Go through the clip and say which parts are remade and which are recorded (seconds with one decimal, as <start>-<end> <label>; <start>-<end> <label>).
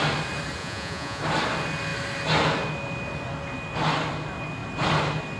0.0-0.6 recorded; 0.6-1.2 remade; 1.2-5.4 recorded